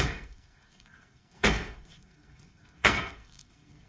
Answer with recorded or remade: remade